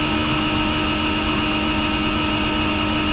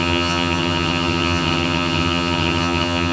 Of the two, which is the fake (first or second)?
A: second